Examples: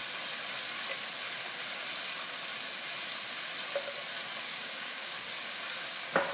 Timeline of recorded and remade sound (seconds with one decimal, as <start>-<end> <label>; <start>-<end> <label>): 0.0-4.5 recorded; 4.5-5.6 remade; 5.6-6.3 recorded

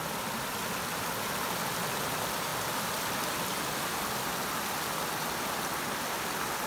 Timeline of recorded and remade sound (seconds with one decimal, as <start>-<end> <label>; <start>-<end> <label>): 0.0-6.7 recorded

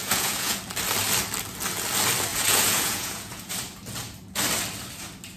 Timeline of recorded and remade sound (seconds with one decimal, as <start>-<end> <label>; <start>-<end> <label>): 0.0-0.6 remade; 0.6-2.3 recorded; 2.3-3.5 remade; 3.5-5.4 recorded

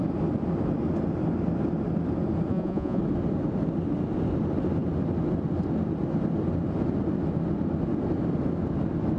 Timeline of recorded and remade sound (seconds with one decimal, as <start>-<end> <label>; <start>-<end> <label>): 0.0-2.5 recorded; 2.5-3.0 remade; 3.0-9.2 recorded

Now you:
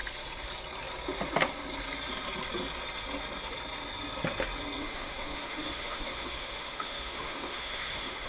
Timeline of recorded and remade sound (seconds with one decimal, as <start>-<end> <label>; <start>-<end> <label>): 0.0-4.8 recorded; 4.8-8.3 remade

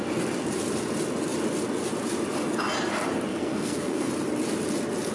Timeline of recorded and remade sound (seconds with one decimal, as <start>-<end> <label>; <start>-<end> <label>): 0.0-3.3 recorded; 3.3-4.1 remade; 4.1-5.1 recorded

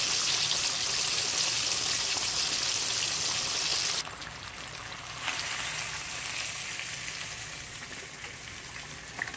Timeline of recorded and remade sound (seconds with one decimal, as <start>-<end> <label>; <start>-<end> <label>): 0.0-9.4 recorded

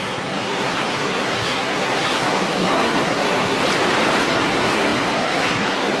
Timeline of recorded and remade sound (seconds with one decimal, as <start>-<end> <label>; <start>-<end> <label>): 0.0-3.6 remade; 3.6-4.2 recorded; 4.2-6.0 remade